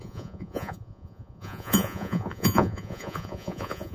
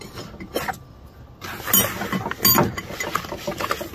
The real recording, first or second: second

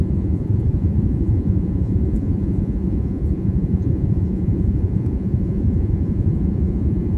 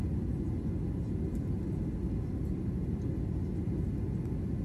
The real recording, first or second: second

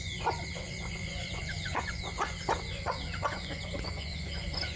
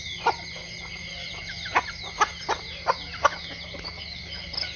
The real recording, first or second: second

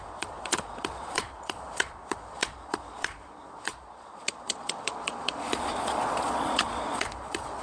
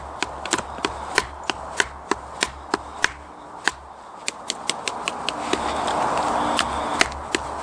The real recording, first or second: second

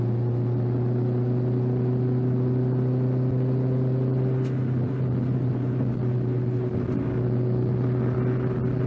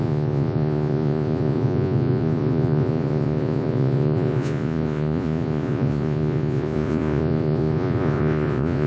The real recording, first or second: first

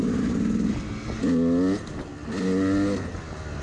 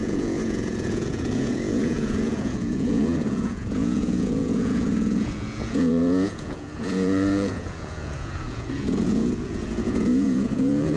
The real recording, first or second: first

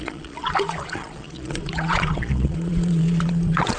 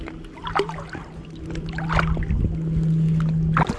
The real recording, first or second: second